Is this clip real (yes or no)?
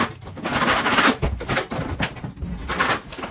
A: yes